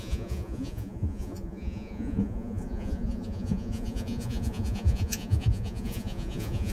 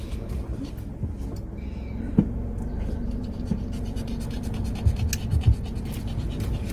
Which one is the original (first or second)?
second